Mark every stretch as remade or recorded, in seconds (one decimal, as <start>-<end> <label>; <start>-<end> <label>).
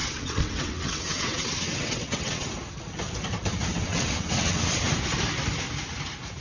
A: 0.0-2.5 remade; 2.5-3.7 recorded; 3.7-4.7 remade; 4.7-6.4 recorded